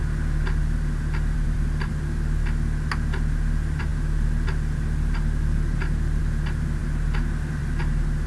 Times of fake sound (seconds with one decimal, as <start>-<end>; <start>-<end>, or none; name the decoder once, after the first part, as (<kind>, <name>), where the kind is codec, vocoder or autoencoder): 0.6-1.9 (vocoder, BigVGAN v2)